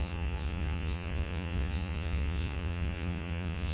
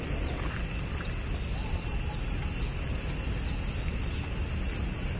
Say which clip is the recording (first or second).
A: second